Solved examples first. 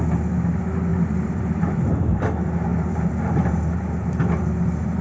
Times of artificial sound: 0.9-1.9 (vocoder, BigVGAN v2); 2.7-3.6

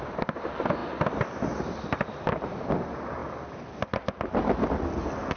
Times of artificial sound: none

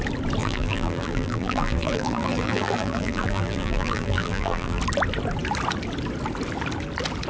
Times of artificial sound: 0.4-4.8 (vocoder, BigVGAN v2)

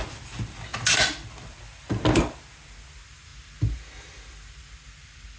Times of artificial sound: none

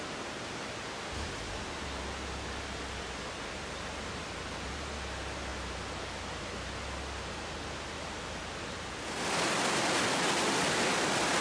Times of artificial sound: none